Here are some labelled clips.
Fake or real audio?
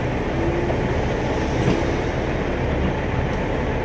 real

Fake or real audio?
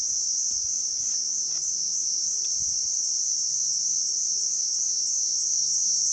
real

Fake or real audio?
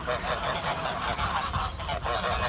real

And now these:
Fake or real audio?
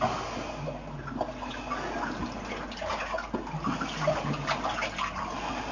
real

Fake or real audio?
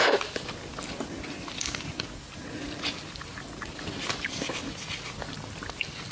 real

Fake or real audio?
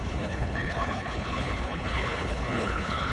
fake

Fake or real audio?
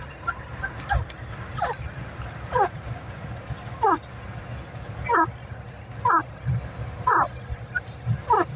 real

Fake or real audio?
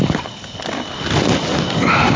real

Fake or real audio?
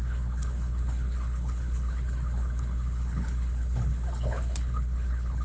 fake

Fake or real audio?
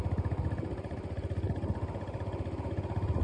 real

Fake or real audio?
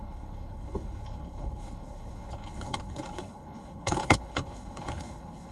fake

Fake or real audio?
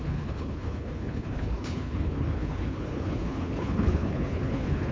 fake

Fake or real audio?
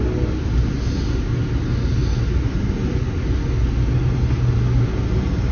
real